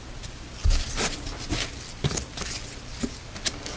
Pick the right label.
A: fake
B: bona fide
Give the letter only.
B